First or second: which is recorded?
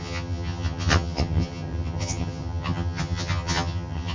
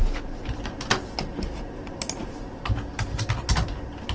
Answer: second